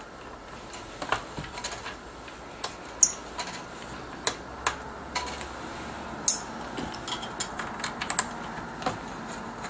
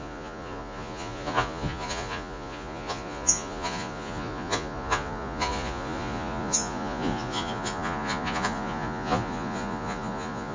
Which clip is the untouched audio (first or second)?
first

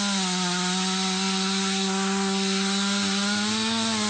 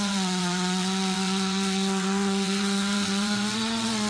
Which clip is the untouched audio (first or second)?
first